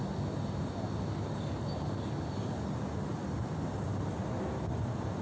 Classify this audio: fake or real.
real